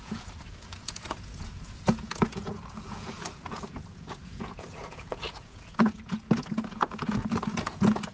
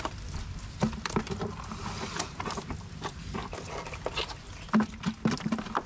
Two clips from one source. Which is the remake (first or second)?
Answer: first